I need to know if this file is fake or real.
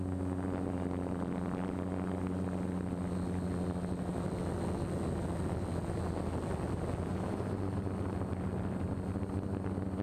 real